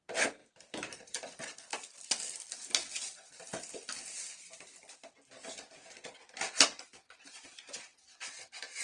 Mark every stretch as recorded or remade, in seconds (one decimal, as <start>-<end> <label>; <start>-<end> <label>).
0.0-0.4 recorded; 0.4-1.4 remade; 1.4-8.8 recorded